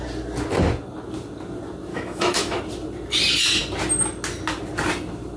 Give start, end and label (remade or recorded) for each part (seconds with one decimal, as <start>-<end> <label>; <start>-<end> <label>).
0.0-1.9 recorded; 1.9-2.6 remade; 2.6-5.4 recorded